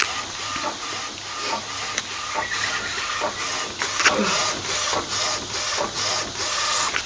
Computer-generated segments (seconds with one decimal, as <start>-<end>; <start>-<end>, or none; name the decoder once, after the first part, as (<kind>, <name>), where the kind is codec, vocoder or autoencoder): none